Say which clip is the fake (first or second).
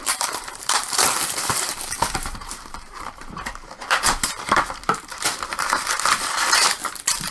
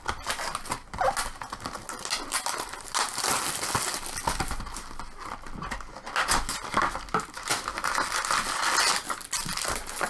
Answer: first